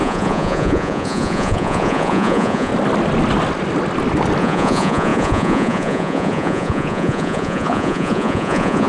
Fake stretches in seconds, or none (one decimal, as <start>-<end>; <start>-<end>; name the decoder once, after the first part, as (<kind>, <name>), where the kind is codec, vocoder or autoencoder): 0.0-2.7 (vocoder, Vocos); 4.4-8.9